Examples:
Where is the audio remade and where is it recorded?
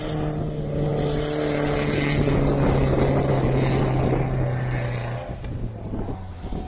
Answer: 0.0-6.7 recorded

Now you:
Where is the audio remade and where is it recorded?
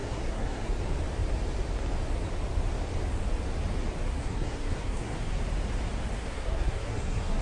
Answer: 0.0-0.7 remade; 0.7-4.2 recorded; 4.2-5.1 remade; 5.1-6.2 recorded; 6.2-7.4 remade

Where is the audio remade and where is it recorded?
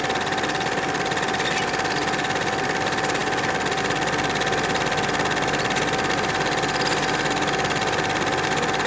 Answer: 0.0-8.9 recorded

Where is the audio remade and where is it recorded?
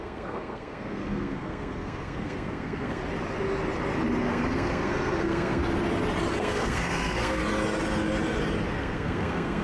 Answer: 0.0-3.0 remade; 3.0-4.3 recorded; 4.3-5.6 remade; 5.6-6.4 recorded; 6.4-7.4 remade; 7.4-8.7 recorded; 8.7-9.6 remade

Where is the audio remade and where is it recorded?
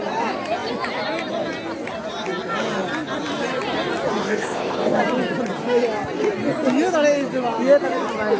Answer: 0.0-4.2 recorded; 4.2-5.0 remade; 5.0-8.4 recorded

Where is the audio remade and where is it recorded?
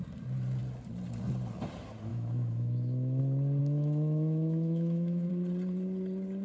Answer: 0.0-2.1 recorded; 2.1-3.2 remade; 3.2-3.6 recorded; 3.6-5.3 remade; 5.3-6.4 recorded